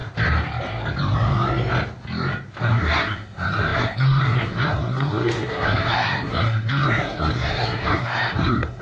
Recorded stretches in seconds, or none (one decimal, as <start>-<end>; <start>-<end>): 0.0-2.6

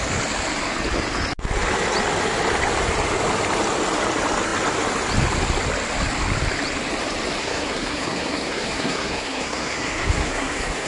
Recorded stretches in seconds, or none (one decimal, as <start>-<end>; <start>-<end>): 0.0-7.4

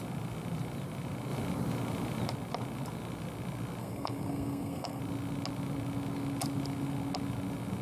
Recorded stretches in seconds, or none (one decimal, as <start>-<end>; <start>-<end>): 0.0-3.8; 5.0-7.8